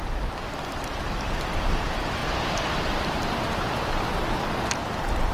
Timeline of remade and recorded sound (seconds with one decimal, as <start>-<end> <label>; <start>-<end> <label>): 0.0-5.3 recorded